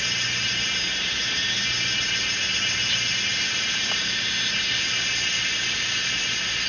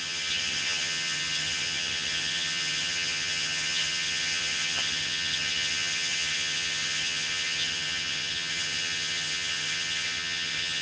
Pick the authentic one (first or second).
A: first